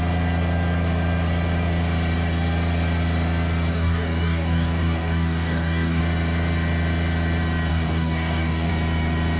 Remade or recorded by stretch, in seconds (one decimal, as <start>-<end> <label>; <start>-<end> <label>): 0.0-3.7 recorded; 3.7-6.0 remade; 6.0-7.7 recorded; 7.7-8.7 remade; 8.7-9.4 recorded